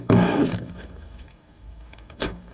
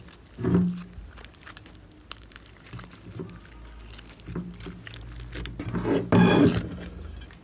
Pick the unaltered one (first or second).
second